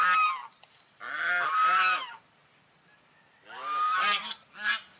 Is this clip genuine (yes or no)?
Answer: yes